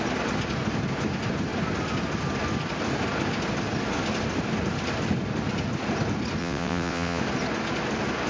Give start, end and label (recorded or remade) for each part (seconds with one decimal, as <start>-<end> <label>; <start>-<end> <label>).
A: 0.0-6.4 recorded; 6.4-7.2 remade; 7.2-8.3 recorded